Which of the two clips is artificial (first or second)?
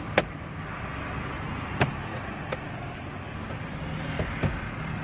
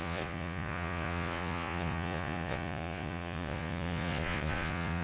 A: second